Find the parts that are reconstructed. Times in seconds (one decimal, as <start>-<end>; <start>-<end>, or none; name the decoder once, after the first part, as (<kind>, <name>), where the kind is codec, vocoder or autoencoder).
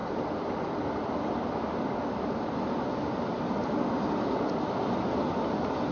none